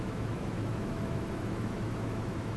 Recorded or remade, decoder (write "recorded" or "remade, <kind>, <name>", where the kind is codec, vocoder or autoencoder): remade, autoencoder, DAC-VAE